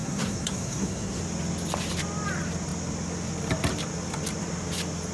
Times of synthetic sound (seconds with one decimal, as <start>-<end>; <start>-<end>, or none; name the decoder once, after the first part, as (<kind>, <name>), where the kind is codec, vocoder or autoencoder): 0.0-1.2 (codec, SNAC)